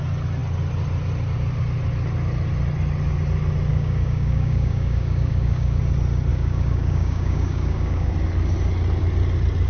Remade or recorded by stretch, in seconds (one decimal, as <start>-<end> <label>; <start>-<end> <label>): 0.0-3.7 recorded; 3.7-5.8 remade; 5.8-6.3 recorded; 6.3-8.1 remade; 8.1-9.7 recorded